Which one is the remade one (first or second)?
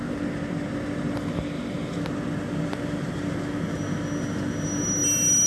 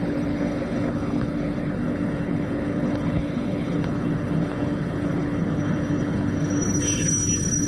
second